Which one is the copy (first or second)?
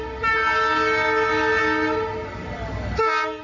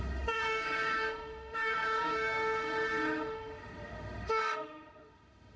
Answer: second